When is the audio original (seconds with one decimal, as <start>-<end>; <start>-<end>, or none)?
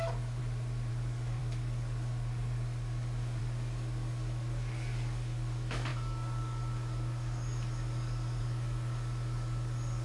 0.4-0.9